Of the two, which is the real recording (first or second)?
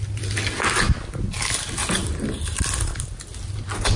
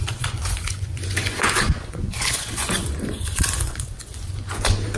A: first